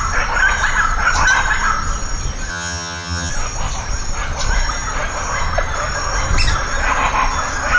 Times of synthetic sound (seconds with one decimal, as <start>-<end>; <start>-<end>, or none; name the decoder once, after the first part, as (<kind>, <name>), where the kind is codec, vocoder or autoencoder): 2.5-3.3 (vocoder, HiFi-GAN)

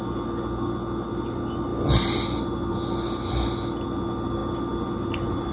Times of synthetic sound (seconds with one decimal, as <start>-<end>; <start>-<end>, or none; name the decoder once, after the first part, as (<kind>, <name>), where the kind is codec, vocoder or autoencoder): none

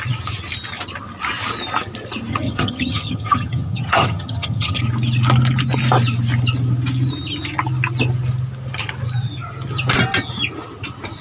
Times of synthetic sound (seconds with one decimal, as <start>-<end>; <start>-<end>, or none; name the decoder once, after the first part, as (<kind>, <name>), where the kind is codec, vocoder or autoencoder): 2.3-4.8 (vocoder, HiFi-GAN)

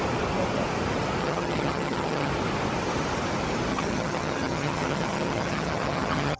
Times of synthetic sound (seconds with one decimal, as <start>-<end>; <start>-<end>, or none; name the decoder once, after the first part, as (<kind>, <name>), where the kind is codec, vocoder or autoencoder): 1.2-2.3 (vocoder, HiFi-GAN); 3.7-6.4

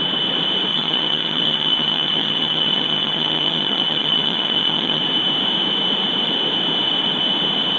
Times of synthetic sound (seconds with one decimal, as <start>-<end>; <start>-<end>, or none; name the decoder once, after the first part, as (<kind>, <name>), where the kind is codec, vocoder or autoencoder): 0.7-5.0 (vocoder, HiFi-GAN)

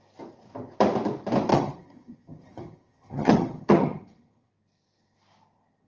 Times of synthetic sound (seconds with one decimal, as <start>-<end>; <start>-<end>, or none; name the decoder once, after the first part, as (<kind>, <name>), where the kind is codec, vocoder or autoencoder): 1.5-4.5 (vocoder, HiFi-GAN)

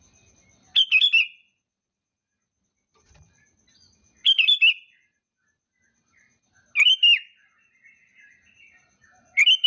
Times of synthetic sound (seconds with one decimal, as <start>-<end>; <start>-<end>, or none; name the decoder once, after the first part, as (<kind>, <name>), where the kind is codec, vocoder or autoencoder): none